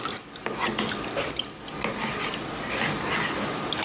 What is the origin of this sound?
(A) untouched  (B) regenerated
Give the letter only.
A